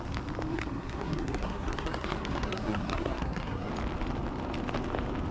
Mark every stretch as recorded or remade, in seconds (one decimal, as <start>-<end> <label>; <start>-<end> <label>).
0.0-0.5 recorded; 0.5-3.7 remade; 3.7-5.3 recorded